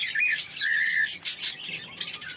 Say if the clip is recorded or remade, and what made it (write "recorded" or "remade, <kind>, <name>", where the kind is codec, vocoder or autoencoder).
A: recorded